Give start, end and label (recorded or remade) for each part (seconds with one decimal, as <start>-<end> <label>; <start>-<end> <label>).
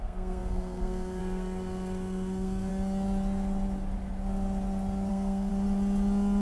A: 0.0-2.7 remade; 2.7-5.1 recorded; 5.1-5.5 remade; 5.5-6.4 recorded